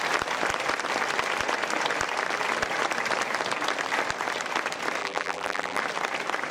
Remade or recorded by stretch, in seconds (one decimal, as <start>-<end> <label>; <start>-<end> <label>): 0.0-5.0 recorded; 5.0-5.8 remade; 5.8-6.5 recorded